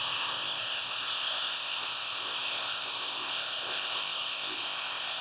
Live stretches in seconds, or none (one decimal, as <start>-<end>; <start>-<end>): none